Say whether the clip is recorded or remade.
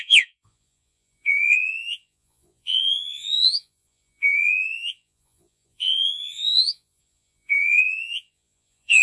remade